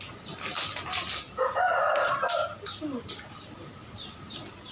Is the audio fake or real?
real